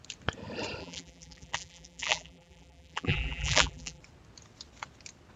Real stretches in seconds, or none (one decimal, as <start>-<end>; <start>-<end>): 0.0-0.8; 4.0-5.4